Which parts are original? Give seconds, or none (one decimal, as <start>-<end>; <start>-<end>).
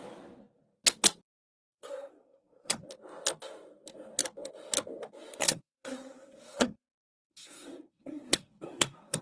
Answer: 0.0-1.6; 2.9-5.4